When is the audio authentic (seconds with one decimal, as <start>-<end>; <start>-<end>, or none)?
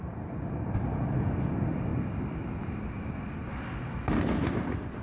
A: 0.0-5.0